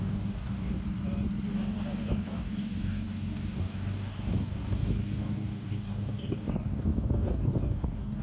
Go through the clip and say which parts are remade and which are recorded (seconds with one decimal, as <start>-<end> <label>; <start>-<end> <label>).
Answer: 0.0-0.8 remade; 0.8-1.5 recorded; 1.5-8.2 remade